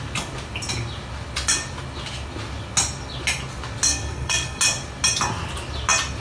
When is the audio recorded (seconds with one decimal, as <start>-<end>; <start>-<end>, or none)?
0.0-3.9; 4.6-6.2